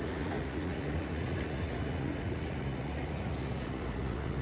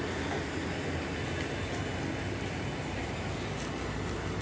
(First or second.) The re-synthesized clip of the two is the first